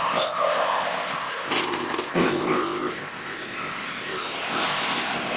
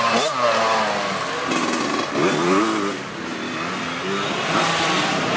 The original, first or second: second